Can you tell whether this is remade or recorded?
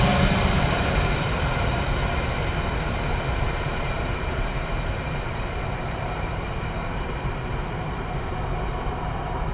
remade